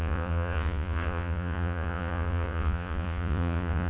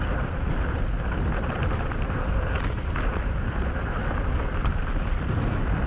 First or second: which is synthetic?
first